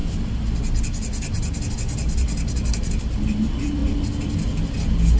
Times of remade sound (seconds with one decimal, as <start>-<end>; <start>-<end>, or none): none